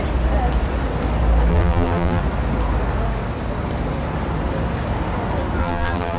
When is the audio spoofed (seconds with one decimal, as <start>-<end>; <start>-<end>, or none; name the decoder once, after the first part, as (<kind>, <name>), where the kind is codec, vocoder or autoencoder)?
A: 1.5-2.2 (vocoder, BigVGAN v2); 5.6-6.2